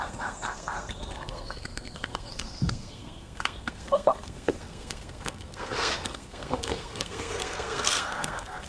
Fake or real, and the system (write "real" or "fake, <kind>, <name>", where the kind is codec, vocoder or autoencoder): fake, codec, SNAC